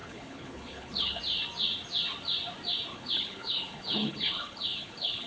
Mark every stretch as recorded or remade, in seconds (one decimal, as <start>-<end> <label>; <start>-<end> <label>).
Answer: 0.0-1.2 remade; 1.2-2.9 recorded; 2.9-5.3 remade